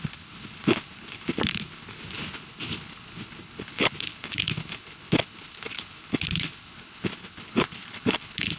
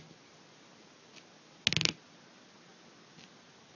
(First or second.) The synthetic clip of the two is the first